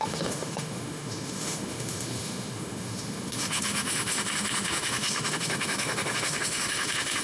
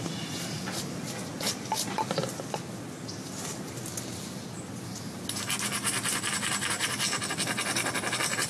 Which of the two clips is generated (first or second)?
first